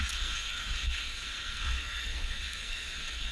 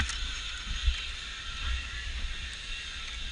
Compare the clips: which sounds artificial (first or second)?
first